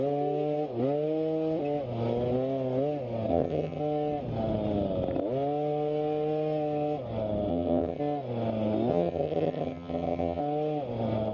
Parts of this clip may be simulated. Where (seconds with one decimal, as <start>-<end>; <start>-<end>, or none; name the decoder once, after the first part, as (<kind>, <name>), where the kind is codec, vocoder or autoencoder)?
3.3-3.8 (vocoder, HiFi-GAN); 7.5-8.0; 8.9-10.4